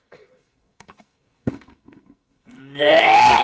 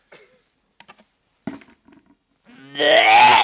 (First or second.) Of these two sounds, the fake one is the first